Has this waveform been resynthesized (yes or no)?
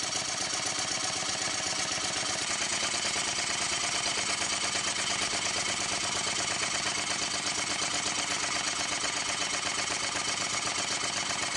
no